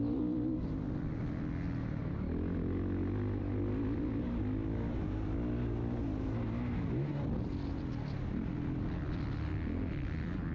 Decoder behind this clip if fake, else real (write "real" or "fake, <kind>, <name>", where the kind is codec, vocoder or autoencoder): real